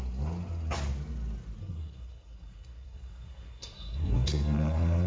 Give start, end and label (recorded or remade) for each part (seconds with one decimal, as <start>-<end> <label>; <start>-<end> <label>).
0.0-1.6 recorded; 1.6-5.1 remade